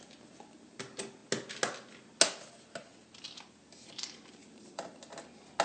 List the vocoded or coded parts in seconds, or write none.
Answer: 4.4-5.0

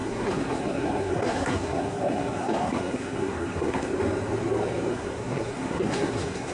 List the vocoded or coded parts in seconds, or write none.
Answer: 0.0-3.9; 4.9-6.5

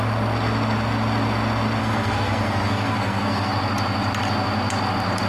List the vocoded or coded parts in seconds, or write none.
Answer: 1.8-3.5

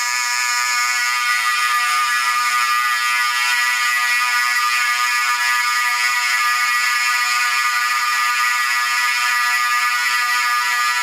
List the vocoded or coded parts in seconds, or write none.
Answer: 1.3-2.5

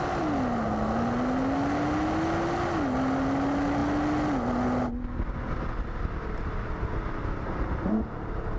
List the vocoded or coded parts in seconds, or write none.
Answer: none

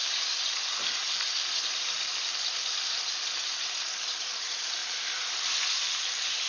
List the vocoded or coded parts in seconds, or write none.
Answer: none